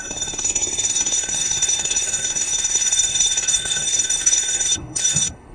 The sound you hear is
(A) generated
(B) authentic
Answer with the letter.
A